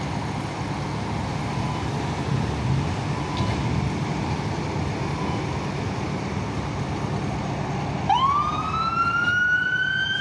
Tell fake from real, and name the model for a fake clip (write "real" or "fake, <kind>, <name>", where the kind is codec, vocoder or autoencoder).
real